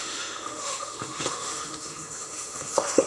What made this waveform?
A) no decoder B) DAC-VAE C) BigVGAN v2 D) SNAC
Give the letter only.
B